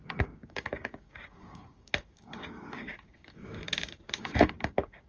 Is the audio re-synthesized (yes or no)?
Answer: yes